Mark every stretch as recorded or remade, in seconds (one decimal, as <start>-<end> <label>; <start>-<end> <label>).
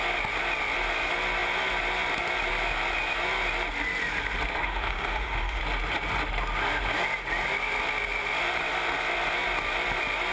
0.0-4.6 recorded; 4.6-5.6 remade; 5.6-10.3 recorded